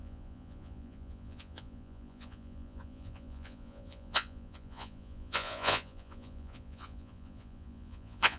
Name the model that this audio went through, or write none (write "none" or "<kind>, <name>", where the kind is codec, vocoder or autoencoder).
vocoder, Vocos